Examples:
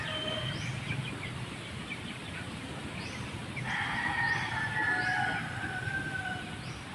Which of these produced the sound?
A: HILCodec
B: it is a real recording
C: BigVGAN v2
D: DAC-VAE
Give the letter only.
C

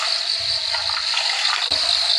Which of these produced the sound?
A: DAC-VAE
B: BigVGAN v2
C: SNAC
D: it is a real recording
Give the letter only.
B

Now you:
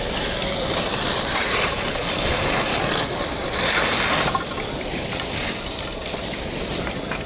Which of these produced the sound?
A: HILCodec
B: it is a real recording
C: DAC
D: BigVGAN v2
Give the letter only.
D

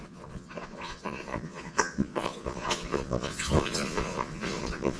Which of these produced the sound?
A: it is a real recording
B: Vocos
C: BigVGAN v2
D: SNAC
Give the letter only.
B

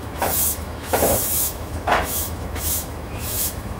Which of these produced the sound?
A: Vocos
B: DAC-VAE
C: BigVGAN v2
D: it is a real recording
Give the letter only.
B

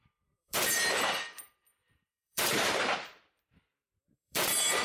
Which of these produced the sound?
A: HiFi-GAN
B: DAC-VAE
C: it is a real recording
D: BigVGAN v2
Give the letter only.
D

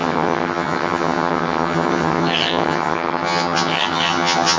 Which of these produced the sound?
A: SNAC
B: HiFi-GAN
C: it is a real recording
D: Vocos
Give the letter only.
B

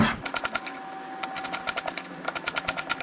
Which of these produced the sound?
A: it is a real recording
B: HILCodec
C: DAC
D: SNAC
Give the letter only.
A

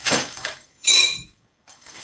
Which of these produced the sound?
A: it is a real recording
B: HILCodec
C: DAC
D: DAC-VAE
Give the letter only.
C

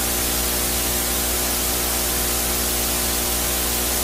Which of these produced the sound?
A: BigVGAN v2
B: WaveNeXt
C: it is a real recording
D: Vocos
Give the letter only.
C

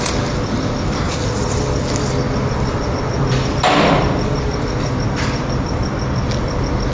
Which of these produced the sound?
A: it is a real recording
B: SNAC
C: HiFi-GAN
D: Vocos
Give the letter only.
A